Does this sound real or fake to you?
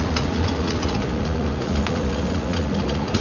fake